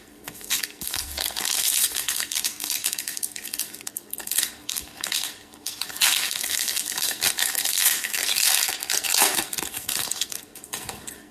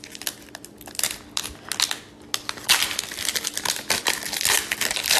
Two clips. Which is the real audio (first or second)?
second